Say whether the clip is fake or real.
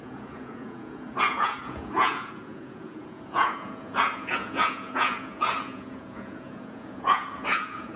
fake